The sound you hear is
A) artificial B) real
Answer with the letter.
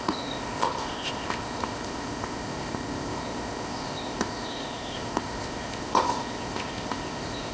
A